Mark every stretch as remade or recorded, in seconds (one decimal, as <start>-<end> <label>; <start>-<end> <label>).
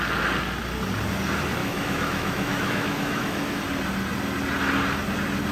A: 0.0-1.6 recorded; 1.6-3.6 remade; 3.6-5.5 recorded